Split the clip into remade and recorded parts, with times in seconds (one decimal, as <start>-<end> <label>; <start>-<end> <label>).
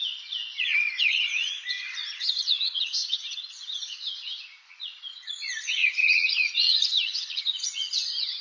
0.0-8.4 remade